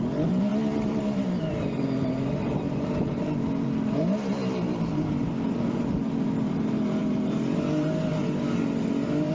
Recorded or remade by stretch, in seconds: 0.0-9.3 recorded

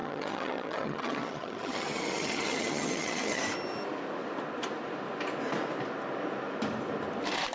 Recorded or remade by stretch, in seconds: 0.0-3.4 remade; 3.4-7.5 recorded

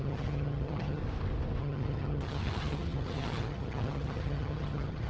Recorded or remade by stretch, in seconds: 0.0-1.0 remade; 1.0-1.6 recorded; 1.6-5.1 remade

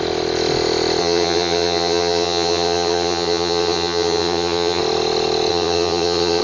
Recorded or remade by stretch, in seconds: 0.0-1.0 recorded; 1.0-4.8 remade; 4.8-5.5 recorded; 5.5-6.4 remade

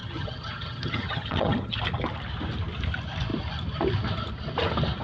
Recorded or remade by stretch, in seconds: 0.0-1.8 remade; 1.8-5.0 recorded

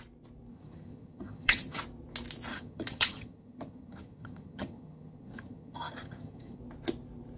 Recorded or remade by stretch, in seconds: 0.0-0.5 recorded; 0.5-1.8 remade; 1.8-2.5 recorded; 2.5-6.6 remade; 6.6-7.4 recorded

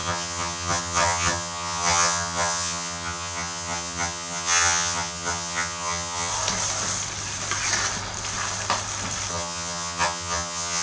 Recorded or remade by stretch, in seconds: 0.0-6.3 remade; 6.3-9.3 recorded; 9.3-10.8 remade